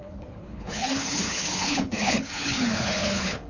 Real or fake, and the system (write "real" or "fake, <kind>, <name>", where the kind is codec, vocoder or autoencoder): fake, codec, HILCodec